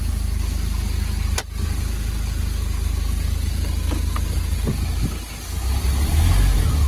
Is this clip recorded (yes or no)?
yes